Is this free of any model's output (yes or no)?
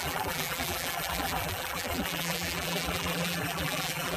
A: no